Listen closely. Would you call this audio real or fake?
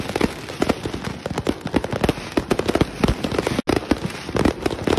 real